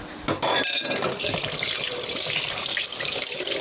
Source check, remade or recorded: recorded